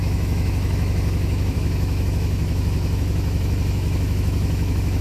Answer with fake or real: fake